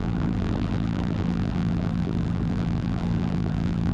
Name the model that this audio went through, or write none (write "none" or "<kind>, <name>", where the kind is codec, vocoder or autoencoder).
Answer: vocoder, BigVGAN v2